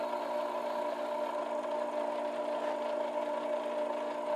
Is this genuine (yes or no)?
yes